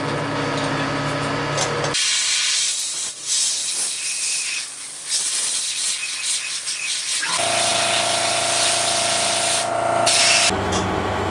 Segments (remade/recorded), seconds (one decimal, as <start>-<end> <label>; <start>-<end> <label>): 0.0-11.3 recorded